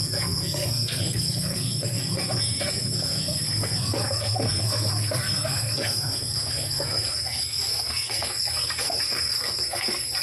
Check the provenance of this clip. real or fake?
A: fake